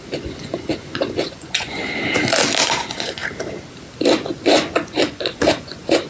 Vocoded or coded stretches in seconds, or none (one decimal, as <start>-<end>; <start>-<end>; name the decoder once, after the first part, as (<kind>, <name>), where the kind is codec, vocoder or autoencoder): 0.0-1.8 (vocoder, Vocos); 2.6-3.2; 4.1-6.1